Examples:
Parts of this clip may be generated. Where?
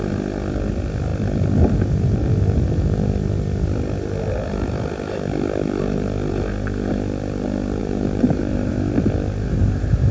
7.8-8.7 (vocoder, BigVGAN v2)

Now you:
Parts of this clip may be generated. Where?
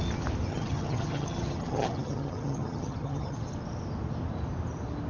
0.5-3.4 (vocoder, HiFi-GAN)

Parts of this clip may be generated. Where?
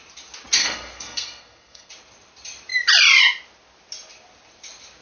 0.6-1.9 (codec, SNAC)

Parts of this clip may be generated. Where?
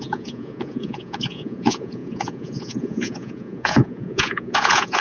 0.0-5.0 (vocoder, Vocos)